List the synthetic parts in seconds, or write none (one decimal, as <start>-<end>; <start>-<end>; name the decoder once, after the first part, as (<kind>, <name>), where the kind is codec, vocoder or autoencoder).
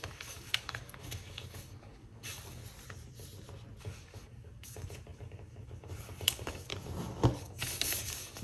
0.0-2.6 (codec, DAC); 3.8-6.7; 7.4-8.4